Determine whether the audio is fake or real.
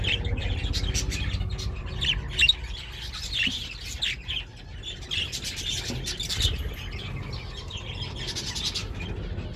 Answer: real